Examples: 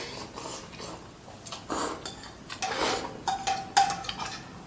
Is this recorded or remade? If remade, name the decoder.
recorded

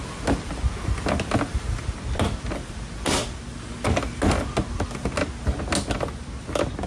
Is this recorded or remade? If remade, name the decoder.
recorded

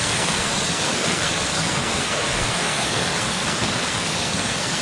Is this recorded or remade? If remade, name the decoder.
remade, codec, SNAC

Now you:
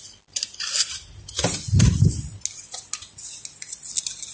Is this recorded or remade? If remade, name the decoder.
recorded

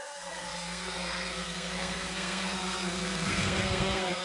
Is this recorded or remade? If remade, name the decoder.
remade, codec, SNAC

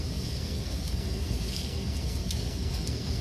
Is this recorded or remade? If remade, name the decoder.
remade, codec, SNAC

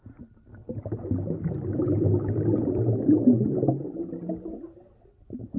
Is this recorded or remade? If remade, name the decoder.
recorded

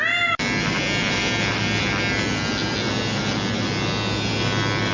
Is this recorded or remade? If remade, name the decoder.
recorded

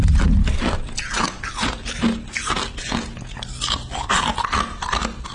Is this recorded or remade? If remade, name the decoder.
recorded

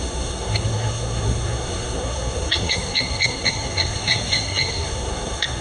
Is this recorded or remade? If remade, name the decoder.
remade, codec, SNAC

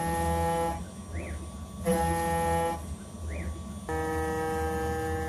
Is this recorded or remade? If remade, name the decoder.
recorded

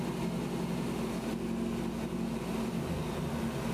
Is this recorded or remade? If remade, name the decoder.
recorded